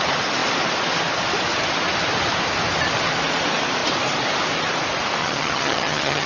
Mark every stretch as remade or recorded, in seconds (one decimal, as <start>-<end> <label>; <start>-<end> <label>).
0.0-5.2 recorded; 5.2-6.3 remade